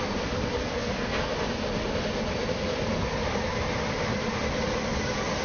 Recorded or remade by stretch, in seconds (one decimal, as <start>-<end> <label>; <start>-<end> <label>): 0.0-0.6 recorded; 0.6-1.2 remade; 1.2-5.4 recorded